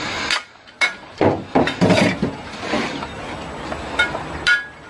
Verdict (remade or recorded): recorded